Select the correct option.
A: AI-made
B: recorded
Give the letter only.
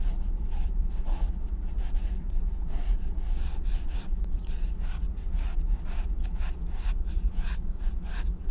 A